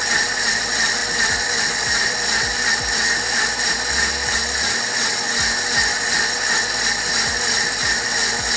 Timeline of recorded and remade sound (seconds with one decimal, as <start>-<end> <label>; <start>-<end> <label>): 0.0-1.0 recorded; 1.0-3.5 remade; 3.5-8.6 recorded